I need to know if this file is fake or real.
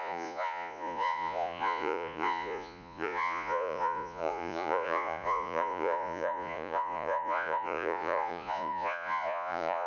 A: fake